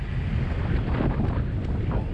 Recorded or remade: recorded